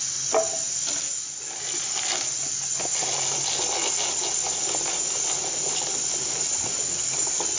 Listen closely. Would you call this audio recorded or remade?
recorded